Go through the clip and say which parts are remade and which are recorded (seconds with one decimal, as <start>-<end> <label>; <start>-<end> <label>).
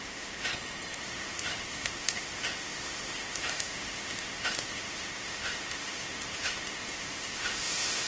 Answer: 0.0-0.5 remade; 0.5-1.0 recorded; 1.0-8.1 remade